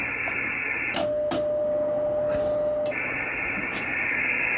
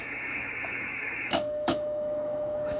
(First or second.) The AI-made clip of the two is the second